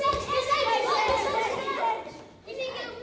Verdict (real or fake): real